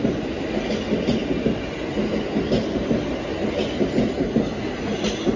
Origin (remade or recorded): recorded